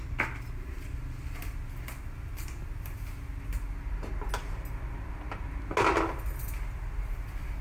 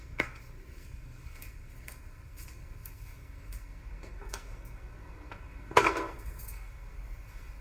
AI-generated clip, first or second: second